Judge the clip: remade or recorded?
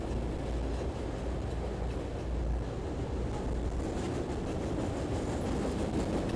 recorded